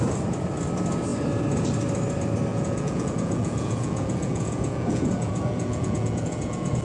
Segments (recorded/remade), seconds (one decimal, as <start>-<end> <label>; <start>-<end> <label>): 0.0-2.5 recorded; 2.5-6.8 remade